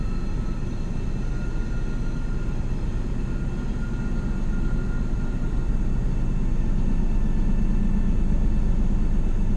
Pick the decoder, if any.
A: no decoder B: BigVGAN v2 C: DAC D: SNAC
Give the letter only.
A